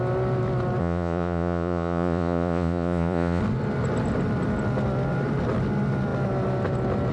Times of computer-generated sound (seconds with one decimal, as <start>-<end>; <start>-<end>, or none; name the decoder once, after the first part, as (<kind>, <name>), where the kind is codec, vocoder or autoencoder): 0.8-3.4 (vocoder, Vocos)